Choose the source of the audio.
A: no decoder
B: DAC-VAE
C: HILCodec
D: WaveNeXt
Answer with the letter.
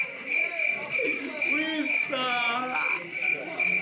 A